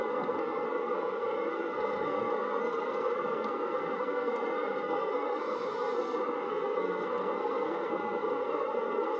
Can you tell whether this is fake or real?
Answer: fake